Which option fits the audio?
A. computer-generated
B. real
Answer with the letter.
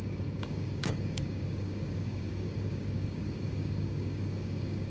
A